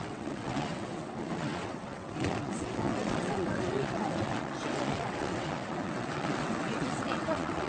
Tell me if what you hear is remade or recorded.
remade